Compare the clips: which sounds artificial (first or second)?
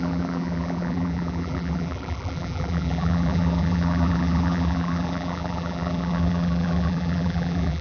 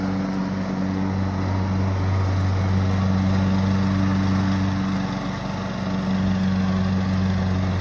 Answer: first